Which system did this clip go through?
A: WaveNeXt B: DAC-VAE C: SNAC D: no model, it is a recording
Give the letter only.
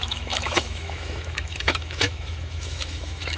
B